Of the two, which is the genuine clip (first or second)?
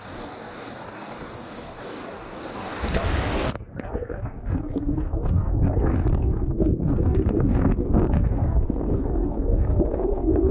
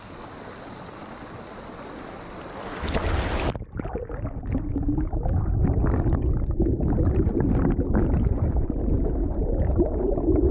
second